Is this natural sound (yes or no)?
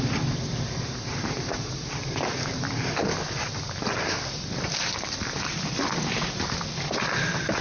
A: no